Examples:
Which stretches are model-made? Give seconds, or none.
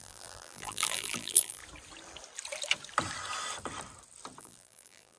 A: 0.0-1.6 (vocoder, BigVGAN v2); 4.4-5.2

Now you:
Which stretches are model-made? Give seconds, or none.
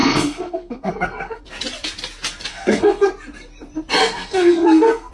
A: 0.0-1.4 (codec, SNAC); 2.5-3.1; 4.0-5.1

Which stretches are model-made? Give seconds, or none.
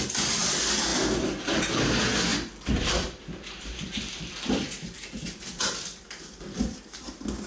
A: 2.3-6.8 (vocoder, BigVGAN v2)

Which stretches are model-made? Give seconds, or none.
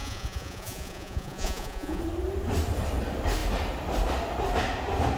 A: 0.0-2.0 (vocoder, Vocos)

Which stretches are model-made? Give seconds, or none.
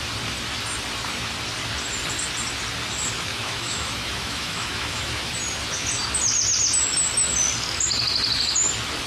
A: 3.3-5.3 (autoencoder, DAC-VAE)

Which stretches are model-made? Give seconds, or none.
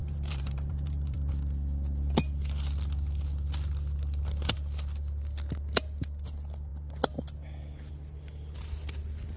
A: 0.0-1.3 (vocoder, BigVGAN v2)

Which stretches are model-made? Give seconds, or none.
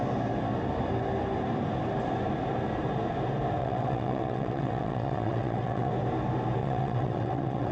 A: 3.6-5.9 (vocoder, WaveNeXt); 6.6-7.7